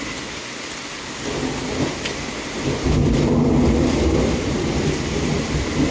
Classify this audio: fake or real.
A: real